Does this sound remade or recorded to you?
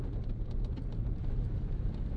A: remade